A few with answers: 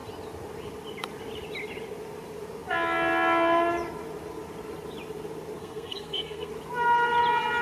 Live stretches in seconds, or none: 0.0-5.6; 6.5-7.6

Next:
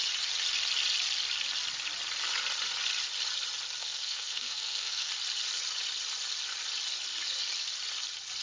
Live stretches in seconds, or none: 0.0-3.8; 5.1-8.4

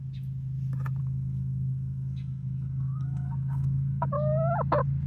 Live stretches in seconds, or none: 0.0-1.0; 4.1-5.1

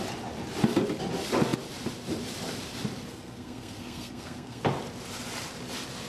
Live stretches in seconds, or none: 0.0-3.1; 4.6-6.1

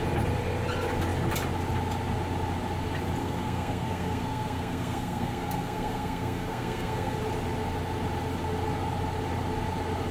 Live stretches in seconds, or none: 0.0-3.2; 7.2-10.1

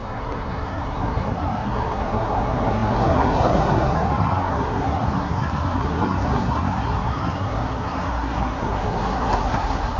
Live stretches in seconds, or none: none

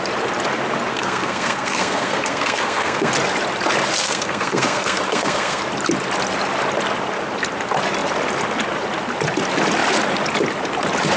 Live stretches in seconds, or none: 0.0-0.9; 3.1-4.0; 5.6-11.2

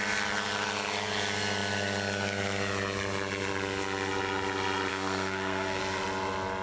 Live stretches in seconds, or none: 0.0-4.9; 5.8-6.6